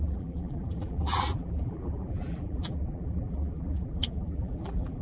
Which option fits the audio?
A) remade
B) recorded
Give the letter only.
A